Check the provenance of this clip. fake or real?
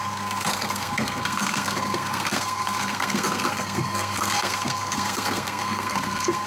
fake